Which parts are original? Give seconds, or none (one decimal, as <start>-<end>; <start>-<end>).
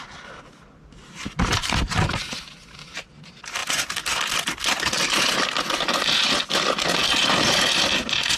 0.0-8.4